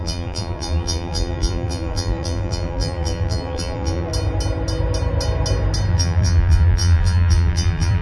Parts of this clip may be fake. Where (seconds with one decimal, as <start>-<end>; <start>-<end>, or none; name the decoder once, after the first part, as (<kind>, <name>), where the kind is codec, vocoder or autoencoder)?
0.0-4.1 (vocoder, BigVGAN v2); 5.9-8.0